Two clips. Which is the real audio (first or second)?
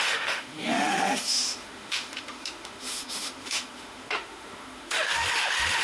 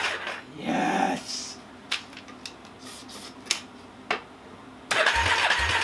second